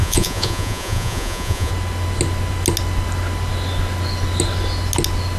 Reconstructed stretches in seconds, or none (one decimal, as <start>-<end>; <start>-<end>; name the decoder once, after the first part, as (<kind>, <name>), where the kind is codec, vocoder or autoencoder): 0.0-1.7 (vocoder, Vocos)